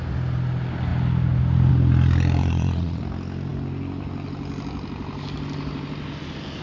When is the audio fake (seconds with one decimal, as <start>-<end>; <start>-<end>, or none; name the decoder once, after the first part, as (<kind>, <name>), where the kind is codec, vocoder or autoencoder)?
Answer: 2.4-3.0 (vocoder, Vocos)